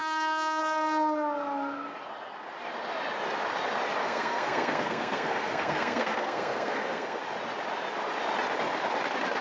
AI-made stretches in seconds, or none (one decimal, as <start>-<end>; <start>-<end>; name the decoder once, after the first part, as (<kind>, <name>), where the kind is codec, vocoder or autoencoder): 0.0-0.6 (codec, SNAC); 4.0-7.2